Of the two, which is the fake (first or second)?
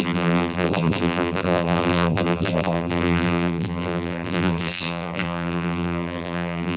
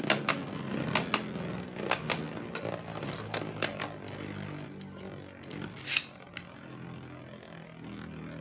first